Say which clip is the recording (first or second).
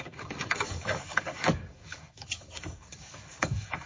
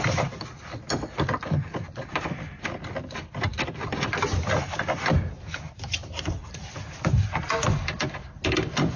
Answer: second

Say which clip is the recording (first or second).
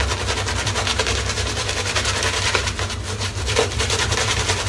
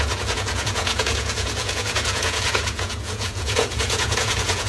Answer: first